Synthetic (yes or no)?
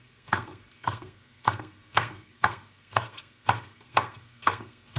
yes